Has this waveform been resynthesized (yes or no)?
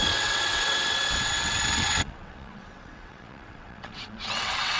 yes